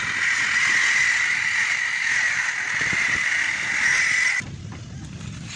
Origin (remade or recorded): recorded